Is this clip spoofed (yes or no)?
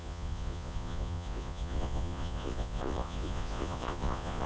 yes